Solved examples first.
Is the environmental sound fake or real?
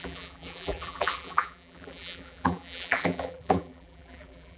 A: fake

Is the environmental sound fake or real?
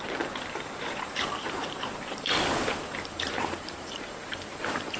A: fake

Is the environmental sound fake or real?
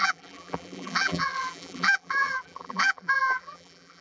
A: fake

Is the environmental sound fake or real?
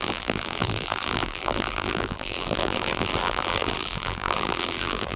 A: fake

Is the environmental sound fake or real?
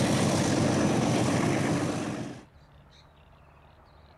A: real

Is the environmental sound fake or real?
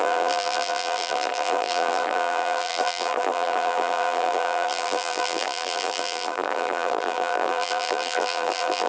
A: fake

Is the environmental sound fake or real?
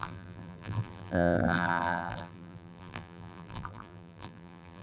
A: fake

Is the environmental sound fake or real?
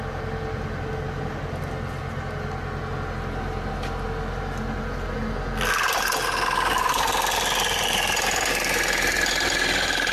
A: real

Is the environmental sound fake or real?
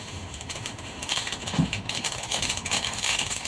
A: fake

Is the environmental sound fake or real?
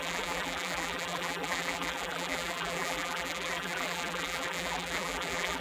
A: fake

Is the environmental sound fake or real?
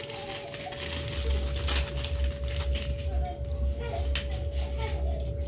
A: real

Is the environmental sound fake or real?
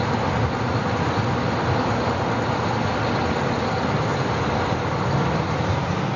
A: real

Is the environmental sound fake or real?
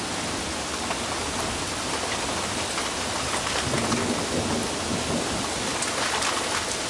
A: real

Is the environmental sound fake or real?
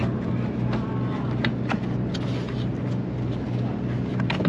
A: real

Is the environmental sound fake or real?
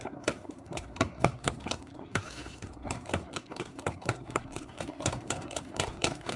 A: fake